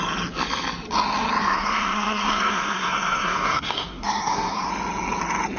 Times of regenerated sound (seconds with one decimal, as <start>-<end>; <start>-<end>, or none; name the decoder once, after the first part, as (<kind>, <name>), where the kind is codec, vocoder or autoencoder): 1.4-4.7 (codec, SNAC)